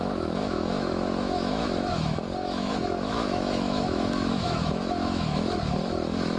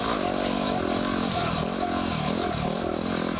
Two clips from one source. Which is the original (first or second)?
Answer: second